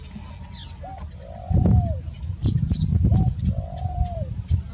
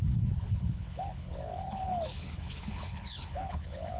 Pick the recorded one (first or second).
first